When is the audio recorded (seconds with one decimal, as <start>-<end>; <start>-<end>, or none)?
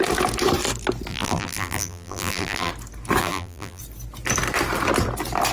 0.0-1.1; 2.7-3.2; 3.8-5.5